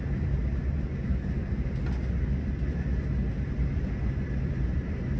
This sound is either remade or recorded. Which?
recorded